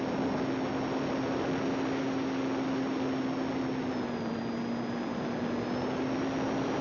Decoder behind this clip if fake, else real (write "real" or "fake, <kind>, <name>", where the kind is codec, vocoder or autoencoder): real